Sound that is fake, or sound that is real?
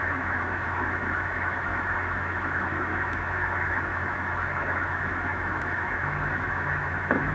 fake